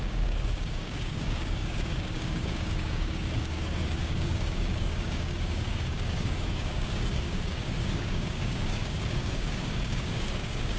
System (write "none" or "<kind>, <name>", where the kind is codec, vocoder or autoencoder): codec, DAC